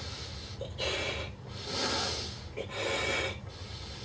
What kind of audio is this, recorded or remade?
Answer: recorded